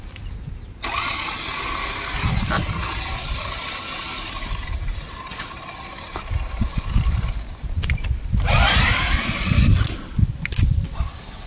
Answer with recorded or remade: recorded